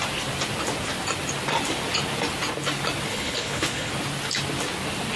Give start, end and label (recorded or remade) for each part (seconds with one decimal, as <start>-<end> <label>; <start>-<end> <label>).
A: 0.0-3.1 recorded; 3.1-3.9 remade; 3.9-5.2 recorded